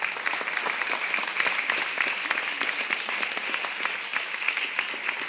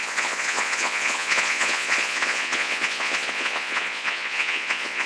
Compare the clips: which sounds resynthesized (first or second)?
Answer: second